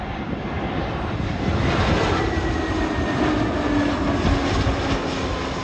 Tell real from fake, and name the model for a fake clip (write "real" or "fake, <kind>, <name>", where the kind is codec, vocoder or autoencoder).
real